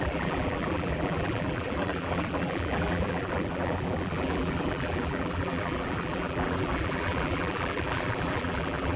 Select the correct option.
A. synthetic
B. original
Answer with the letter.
A